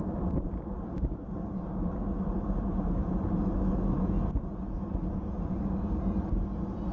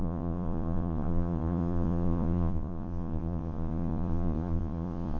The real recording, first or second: first